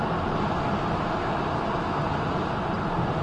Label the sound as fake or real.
real